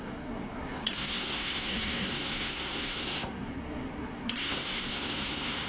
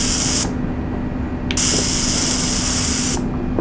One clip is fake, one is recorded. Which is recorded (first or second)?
second